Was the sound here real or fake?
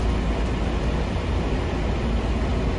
real